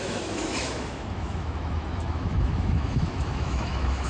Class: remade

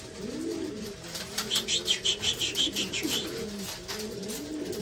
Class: recorded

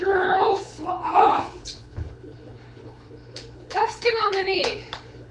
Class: remade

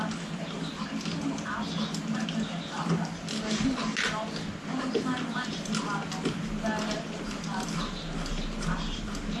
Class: recorded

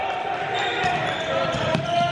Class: recorded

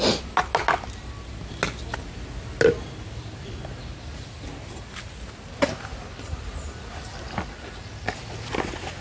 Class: recorded